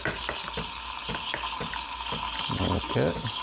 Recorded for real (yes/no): yes